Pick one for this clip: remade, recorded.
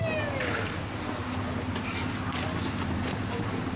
recorded